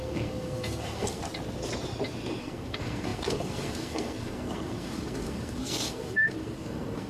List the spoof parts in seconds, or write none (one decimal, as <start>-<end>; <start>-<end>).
0.0-1.2; 2.4-7.1